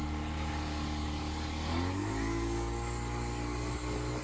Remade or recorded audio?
remade